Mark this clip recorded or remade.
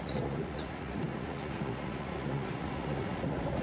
remade